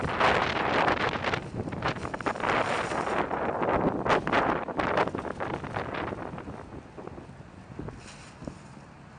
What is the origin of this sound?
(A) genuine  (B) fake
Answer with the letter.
A